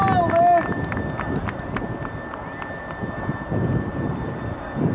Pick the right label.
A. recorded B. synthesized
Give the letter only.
A